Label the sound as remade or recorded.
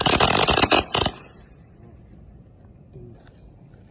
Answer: recorded